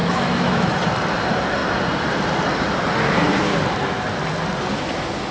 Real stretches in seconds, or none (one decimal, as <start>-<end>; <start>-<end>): 0.7-5.3